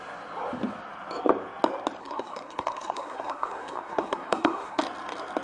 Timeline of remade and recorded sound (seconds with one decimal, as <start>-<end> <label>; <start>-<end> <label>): 0.0-2.0 recorded; 2.0-4.8 remade; 4.8-5.4 recorded